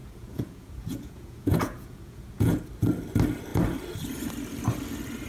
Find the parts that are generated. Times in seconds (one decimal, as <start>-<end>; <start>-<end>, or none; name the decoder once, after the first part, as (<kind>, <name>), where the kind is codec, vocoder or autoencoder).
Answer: 0.0-2.6 (vocoder, Vocos)